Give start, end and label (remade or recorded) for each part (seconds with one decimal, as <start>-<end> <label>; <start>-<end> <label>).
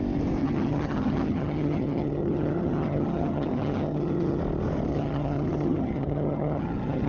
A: 0.0-0.4 recorded; 0.4-4.4 remade; 4.4-4.9 recorded; 4.9-7.1 remade